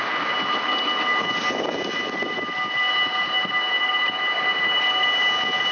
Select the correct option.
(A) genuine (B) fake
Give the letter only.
A